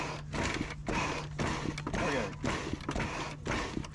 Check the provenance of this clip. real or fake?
real